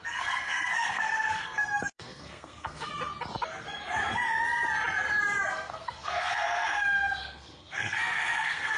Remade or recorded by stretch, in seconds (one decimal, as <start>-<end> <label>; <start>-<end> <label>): 0.0-2.9 remade; 2.9-5.5 recorded; 5.5-8.8 remade